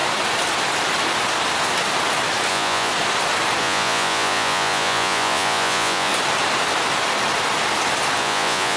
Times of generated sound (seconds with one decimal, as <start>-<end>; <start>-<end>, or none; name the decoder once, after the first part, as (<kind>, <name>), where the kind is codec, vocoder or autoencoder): 2.5-2.9 (vocoder, Vocos); 3.6-6.1; 8.2-8.8